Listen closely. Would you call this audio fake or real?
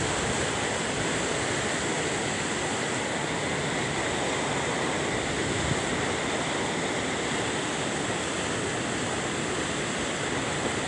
real